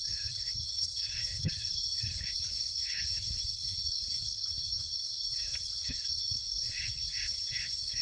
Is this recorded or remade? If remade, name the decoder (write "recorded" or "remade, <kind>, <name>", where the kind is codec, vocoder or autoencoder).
remade, codec, HILCodec